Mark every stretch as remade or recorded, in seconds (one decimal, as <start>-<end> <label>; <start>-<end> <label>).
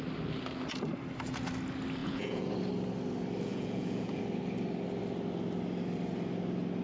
0.0-2.0 recorded; 2.0-2.5 remade; 2.5-3.5 recorded; 3.5-4.2 remade; 4.2-6.8 recorded